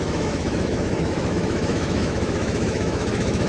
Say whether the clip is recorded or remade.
remade